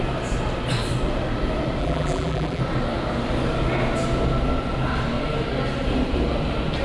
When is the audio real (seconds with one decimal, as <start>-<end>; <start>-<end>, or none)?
0.0-1.8; 2.6-6.8